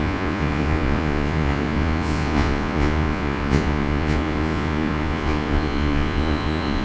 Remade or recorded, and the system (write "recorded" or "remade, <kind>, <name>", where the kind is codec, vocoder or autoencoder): remade, vocoder, Vocos